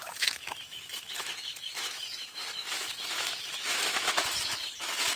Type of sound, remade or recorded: remade